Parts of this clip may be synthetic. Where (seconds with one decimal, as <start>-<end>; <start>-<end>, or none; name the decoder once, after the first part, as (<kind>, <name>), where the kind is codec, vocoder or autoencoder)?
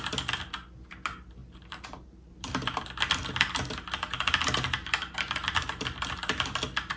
1.4-2.8 (vocoder, BigVGAN v2)